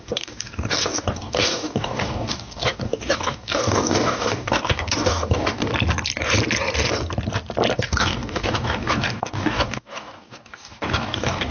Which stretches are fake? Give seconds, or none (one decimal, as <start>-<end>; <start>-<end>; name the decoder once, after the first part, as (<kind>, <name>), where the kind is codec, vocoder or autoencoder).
0.0-5.7 (codec, DAC); 7.7-11.5